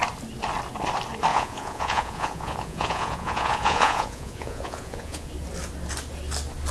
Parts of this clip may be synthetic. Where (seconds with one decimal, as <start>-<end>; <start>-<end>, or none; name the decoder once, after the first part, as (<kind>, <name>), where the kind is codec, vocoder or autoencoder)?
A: 1.3-5.3 (vocoder, Vocos)